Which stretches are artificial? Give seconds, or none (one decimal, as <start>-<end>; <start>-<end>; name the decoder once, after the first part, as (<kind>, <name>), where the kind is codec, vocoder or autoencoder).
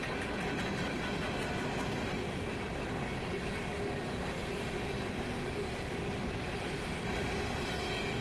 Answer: none